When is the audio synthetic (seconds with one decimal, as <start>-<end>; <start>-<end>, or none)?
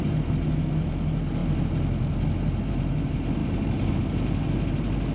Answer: none